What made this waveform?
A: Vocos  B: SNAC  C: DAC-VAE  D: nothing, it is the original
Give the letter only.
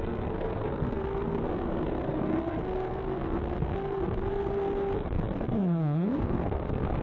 B